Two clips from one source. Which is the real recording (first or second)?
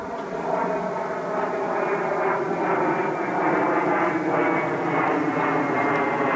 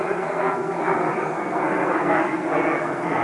first